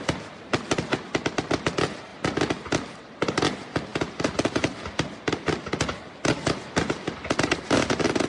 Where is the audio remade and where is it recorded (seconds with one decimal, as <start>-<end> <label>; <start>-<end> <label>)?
0.0-8.3 recorded